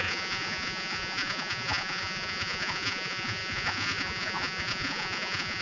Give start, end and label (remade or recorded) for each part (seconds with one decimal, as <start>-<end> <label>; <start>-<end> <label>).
0.0-5.6 remade